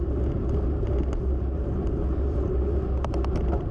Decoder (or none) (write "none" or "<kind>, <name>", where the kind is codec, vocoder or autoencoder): none